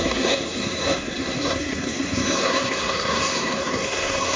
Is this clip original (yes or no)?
no